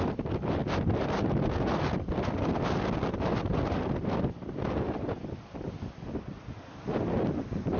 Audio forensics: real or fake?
real